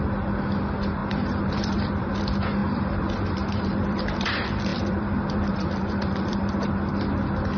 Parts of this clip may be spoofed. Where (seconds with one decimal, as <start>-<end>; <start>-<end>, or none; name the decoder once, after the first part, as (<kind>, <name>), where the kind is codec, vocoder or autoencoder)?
1.0-2.2 (vocoder, BigVGAN v2); 2.6-4.3; 4.7-6.9

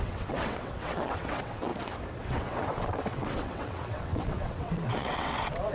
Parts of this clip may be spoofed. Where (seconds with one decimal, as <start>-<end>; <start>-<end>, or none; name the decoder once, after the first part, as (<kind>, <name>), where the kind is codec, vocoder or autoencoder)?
0.0-1.7 (vocoder, WaveNeXt); 2.2-5.7

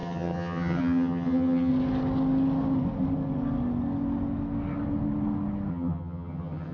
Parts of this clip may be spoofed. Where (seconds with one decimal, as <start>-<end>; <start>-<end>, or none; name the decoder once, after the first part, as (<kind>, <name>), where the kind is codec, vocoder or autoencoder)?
0.0-1.7 (vocoder, HiFi-GAN); 5.7-6.7